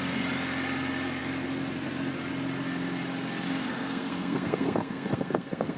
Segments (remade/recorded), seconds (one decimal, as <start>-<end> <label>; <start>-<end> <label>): 0.0-3.6 recorded; 3.6-5.8 remade